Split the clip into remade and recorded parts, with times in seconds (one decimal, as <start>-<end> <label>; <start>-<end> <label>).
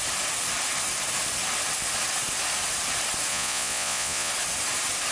0.0-3.3 recorded; 3.3-4.3 remade; 4.3-5.1 recorded